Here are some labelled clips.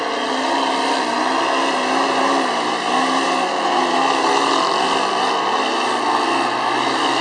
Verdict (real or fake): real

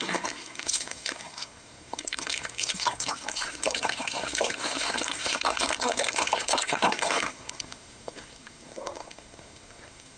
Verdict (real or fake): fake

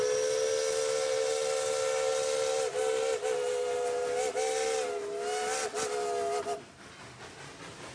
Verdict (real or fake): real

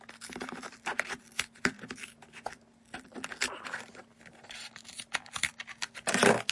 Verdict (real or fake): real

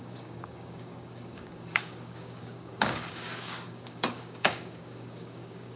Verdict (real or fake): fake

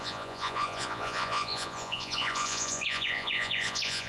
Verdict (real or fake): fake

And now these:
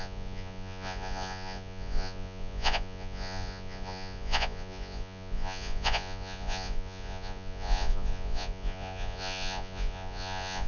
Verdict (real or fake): fake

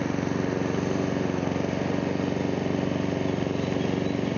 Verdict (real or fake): real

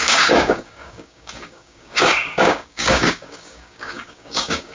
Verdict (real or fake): fake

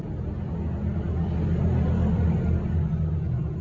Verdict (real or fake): real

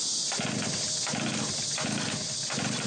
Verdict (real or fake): real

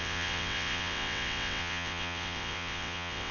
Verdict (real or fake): fake